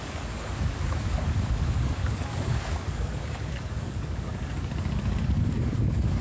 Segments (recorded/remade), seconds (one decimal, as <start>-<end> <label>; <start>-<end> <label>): 0.0-6.2 remade